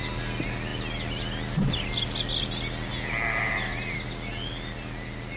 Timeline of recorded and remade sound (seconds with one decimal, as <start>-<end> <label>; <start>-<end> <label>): 0.0-5.4 recorded